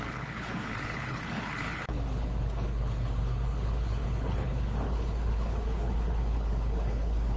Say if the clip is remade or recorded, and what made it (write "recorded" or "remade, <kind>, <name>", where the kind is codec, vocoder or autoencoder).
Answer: remade, codec, HILCodec